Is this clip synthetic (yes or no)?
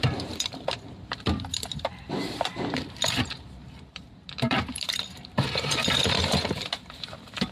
yes